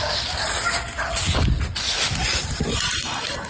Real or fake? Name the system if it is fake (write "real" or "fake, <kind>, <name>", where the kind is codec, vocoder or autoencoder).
real